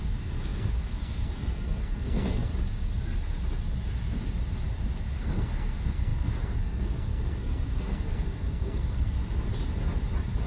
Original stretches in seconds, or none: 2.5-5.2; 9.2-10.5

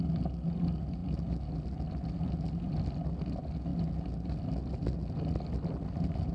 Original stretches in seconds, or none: 0.0-6.3

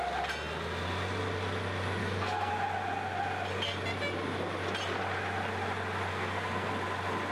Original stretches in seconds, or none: 0.0-2.0; 2.5-6.1; 6.7-7.3

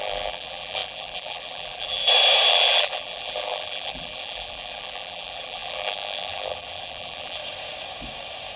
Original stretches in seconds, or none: 2.0-2.5; 7.4-8.6

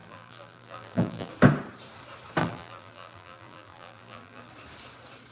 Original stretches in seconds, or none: 1.3-2.4; 4.5-5.3

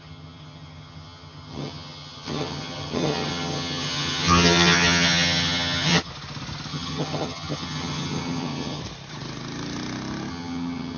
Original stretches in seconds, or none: 6.1-6.7; 8.8-10.3